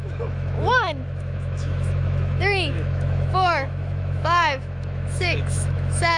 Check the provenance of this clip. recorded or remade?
remade